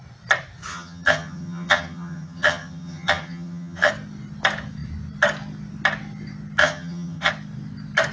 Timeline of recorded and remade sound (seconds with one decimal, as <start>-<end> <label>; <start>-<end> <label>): 0.0-0.7 recorded; 0.7-3.9 remade; 3.9-6.6 recorded; 6.6-7.3 remade; 7.3-8.1 recorded